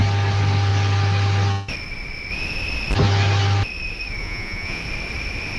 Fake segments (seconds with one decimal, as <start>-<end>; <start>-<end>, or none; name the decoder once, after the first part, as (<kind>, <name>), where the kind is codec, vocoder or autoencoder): 4.2-4.8 (vocoder, Vocos)